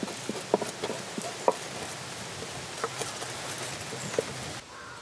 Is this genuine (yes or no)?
yes